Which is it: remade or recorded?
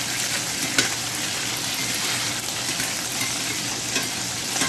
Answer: recorded